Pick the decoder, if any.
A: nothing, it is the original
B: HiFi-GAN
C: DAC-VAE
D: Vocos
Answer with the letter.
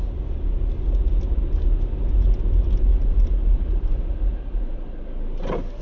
A